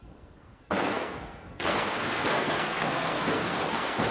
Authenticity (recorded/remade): remade